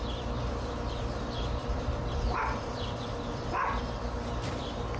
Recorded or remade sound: remade